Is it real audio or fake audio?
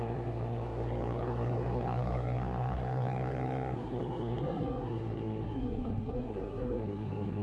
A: fake